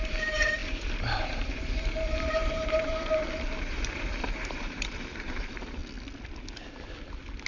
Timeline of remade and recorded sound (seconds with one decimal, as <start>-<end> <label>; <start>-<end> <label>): 0.0-5.8 remade; 5.8-7.5 recorded